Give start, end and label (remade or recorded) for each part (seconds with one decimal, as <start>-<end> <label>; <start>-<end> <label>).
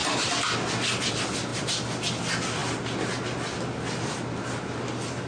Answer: 0.0-5.3 recorded